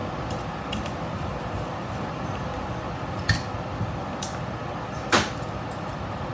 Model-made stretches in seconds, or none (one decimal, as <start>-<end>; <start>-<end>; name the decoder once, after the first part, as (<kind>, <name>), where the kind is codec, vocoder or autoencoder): none